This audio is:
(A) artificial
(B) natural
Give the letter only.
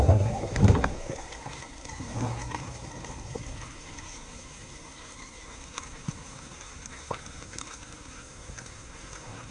A